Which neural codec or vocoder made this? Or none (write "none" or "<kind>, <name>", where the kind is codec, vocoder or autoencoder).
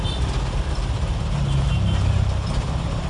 none